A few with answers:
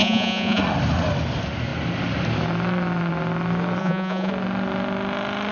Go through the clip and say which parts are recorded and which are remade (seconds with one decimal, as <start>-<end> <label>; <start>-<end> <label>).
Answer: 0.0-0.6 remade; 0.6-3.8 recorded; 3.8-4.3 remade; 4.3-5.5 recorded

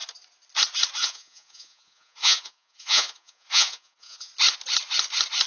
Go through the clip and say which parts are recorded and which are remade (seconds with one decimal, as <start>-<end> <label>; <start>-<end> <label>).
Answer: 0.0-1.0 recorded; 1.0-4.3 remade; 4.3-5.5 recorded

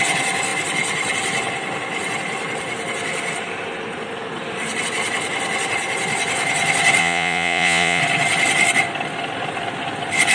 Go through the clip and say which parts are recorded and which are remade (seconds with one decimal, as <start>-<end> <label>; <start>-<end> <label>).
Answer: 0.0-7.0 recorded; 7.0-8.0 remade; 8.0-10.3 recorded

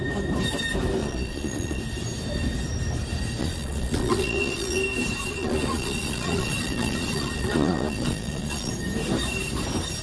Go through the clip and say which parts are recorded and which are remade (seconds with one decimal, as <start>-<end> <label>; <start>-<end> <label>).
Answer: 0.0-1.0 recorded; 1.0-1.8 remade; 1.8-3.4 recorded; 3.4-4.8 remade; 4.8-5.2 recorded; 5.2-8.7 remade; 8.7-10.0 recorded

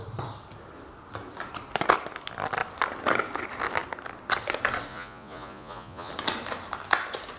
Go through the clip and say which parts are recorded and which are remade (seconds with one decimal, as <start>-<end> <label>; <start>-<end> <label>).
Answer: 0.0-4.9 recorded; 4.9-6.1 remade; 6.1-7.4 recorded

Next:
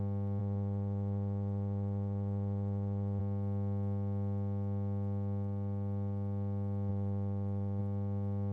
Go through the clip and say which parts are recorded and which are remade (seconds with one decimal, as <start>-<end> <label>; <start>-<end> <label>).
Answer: 0.0-0.4 recorded; 0.4-3.2 remade; 3.2-6.9 recorded; 6.9-7.8 remade; 7.8-8.5 recorded

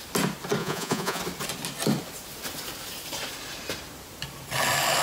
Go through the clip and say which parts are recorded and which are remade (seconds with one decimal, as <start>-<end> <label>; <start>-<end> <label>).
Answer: 0.0-0.6 recorded; 0.6-1.2 remade; 1.2-5.0 recorded

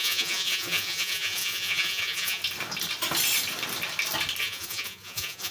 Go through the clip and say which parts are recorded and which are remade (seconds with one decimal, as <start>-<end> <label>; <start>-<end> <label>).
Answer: 0.0-2.4 remade; 2.4-4.4 recorded; 4.4-5.5 remade